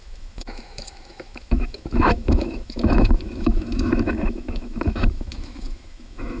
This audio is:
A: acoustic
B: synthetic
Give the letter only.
B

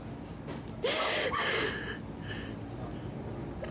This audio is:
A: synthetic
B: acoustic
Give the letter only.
B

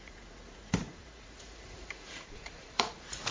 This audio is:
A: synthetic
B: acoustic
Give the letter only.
A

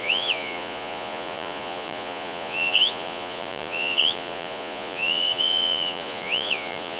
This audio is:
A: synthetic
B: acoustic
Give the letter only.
A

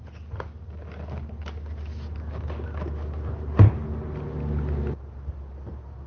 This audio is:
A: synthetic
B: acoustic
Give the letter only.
B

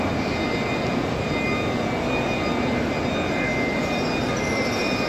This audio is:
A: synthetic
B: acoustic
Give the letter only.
B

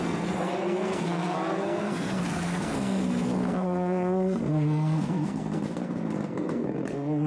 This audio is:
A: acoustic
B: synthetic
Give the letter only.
B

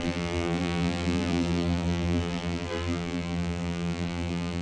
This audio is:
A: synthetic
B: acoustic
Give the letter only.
A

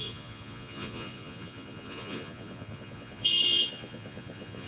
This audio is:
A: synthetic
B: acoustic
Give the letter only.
A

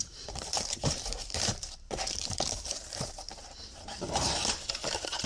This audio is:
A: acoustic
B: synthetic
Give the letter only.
B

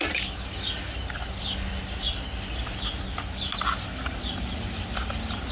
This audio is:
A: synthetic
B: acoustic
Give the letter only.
B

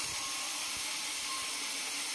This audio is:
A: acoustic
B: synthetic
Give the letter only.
A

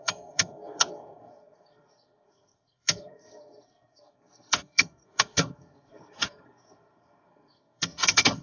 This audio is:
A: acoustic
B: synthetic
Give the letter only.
B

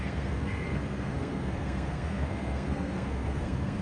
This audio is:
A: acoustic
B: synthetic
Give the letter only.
B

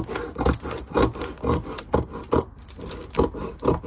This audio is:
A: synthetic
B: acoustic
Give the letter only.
B